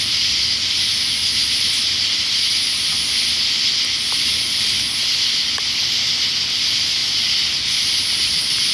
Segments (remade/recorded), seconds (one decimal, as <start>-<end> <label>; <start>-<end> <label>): 0.0-8.7 recorded

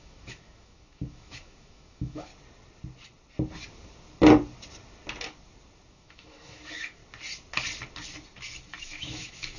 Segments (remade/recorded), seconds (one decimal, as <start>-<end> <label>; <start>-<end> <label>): 0.0-2.3 remade; 2.3-5.9 recorded; 5.9-7.0 remade; 7.0-8.8 recorded; 8.8-9.6 remade

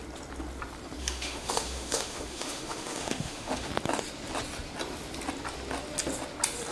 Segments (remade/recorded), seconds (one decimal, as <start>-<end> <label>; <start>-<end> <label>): 0.0-1.0 recorded; 1.0-3.7 remade; 3.7-6.7 recorded

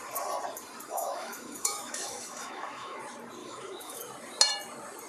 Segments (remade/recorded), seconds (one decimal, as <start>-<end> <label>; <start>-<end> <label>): 0.0-0.9 recorded; 0.9-3.0 remade; 3.0-3.4 recorded; 3.4-4.0 remade; 4.0-5.1 recorded

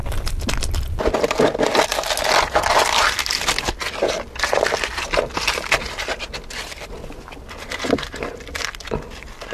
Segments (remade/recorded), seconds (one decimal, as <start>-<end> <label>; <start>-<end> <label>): 0.0-9.5 recorded

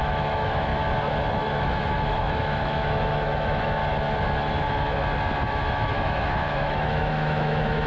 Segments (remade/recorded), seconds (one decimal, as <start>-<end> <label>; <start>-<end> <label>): 0.0-0.7 remade; 0.7-1.3 recorded; 1.3-3.8 remade; 3.8-5.5 recorded; 5.5-7.9 remade

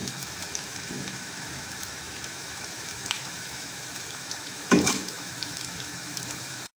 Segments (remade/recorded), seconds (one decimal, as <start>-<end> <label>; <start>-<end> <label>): 0.0-6.8 remade